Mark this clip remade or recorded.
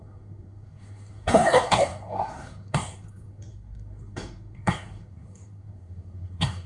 remade